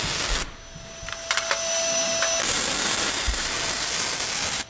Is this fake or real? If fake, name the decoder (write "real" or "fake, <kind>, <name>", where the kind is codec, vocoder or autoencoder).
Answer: real